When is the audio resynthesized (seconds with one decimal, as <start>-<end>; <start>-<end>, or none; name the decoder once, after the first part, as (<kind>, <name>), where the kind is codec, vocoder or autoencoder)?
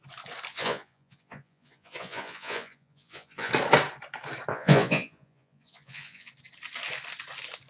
0.5-3.5 (vocoder, Vocos); 4.5-6.3